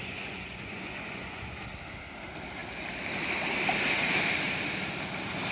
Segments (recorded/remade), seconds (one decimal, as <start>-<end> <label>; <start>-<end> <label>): 0.0-1.6 remade; 1.6-5.5 recorded

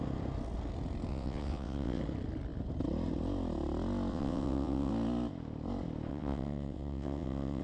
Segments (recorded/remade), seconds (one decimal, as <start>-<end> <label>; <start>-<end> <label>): 0.0-1.1 recorded; 1.1-2.0 remade; 2.0-4.1 recorded; 4.1-4.9 remade; 4.9-6.1 recorded; 6.1-7.6 remade

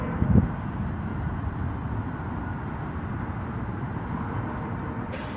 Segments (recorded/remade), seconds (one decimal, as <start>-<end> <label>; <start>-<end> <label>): 0.0-5.4 recorded